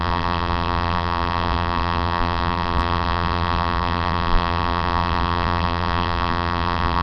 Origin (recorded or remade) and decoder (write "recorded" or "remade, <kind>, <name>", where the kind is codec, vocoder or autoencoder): remade, vocoder, BigVGAN v2